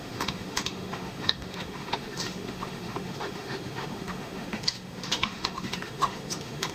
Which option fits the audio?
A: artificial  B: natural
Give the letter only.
A